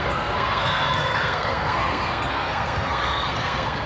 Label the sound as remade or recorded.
remade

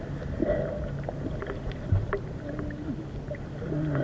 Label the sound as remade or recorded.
recorded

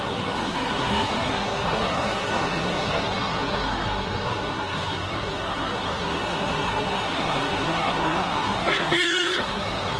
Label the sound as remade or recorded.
remade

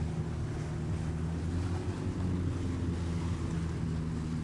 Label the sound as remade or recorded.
recorded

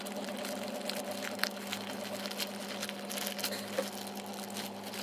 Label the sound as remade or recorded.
recorded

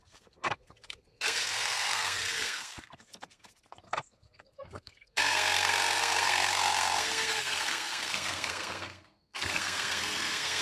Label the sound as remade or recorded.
remade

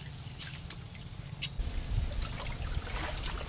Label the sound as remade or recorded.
recorded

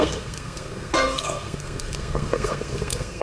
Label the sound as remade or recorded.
remade